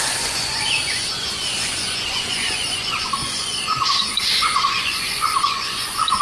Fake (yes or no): yes